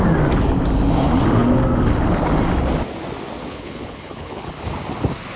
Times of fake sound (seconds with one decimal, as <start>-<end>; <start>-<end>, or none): 3.4-4.5